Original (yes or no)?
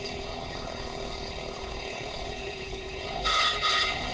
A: no